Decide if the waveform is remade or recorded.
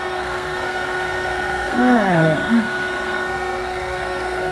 remade